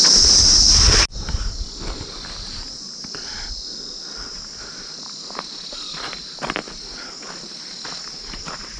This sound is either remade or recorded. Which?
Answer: recorded